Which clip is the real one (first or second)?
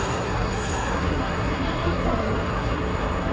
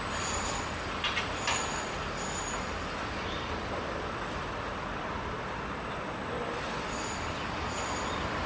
second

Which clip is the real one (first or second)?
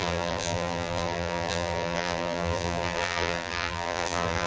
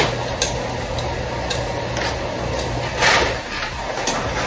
second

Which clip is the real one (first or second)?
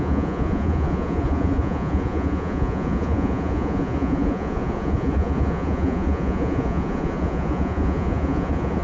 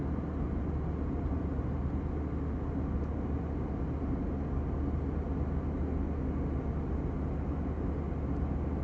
second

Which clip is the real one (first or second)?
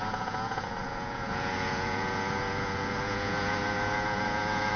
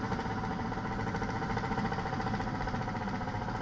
second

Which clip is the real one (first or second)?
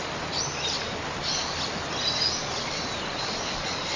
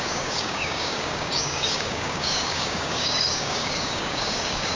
first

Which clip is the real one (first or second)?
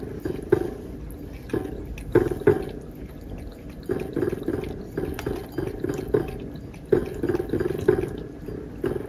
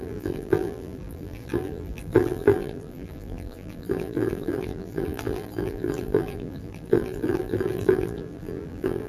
first